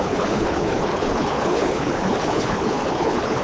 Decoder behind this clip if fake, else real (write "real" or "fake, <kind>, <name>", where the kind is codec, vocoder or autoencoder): fake, codec, HILCodec